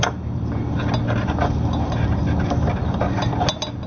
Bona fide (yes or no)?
yes